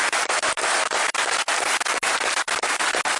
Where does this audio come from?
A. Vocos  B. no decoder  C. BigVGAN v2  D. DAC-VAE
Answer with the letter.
B